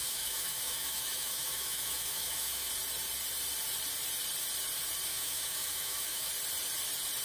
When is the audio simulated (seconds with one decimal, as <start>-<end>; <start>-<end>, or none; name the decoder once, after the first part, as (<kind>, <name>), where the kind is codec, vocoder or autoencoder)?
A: 0.0-2.7 (autoencoder, DAC-VAE); 5.1-6.3